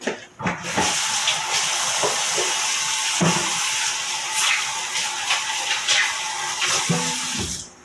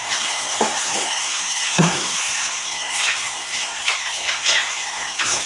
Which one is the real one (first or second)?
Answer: first